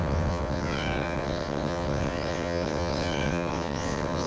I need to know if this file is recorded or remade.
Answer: remade